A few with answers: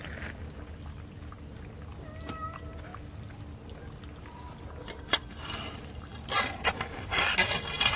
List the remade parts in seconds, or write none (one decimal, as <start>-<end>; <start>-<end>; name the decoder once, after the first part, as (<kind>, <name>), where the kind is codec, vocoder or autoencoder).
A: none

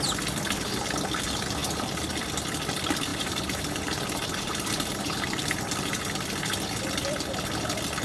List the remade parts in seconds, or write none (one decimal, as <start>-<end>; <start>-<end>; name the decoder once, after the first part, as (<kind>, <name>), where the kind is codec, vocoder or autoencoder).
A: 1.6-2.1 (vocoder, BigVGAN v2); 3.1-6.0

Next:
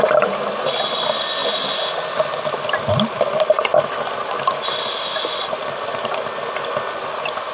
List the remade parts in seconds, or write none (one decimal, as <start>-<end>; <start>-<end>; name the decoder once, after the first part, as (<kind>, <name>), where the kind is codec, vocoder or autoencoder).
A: none

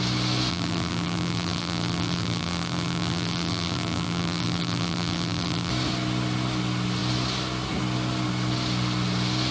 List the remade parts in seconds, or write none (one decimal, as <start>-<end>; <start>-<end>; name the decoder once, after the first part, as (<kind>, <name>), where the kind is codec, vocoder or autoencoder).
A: 0.5-5.7 (vocoder, BigVGAN v2)

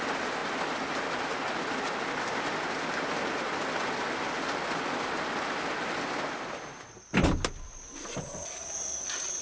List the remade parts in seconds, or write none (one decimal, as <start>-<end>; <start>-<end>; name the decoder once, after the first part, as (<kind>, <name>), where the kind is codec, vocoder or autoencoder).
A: none

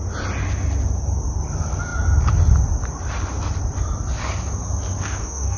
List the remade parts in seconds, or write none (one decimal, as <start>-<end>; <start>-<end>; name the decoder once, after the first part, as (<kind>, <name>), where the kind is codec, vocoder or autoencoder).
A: 5.0-5.6 (codec, DAC)

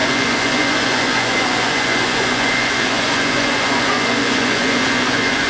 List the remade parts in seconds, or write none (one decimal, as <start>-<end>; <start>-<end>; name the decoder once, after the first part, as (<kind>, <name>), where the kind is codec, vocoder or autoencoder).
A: 0.0-5.5 (vocoder, Vocos)